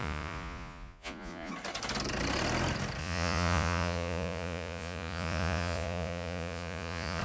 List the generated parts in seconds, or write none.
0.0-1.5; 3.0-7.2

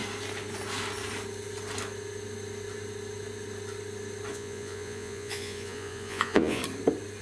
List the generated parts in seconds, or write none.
4.3-6.6

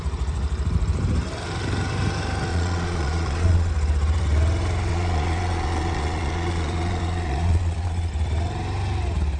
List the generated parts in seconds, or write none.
2.5-3.7; 4.9-8.1

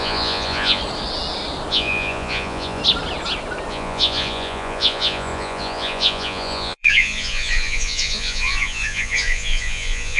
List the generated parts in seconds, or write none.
0.0-0.8; 1.7-2.8; 3.7-10.2

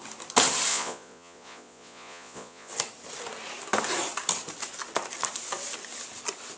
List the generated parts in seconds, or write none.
0.7-2.7

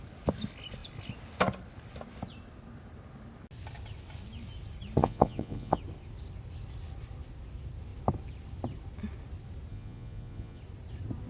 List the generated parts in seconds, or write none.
5.0-5.8; 9.7-10.6

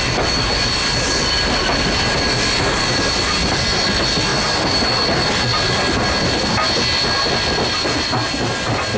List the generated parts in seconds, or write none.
none